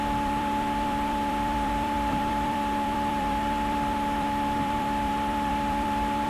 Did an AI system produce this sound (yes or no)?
yes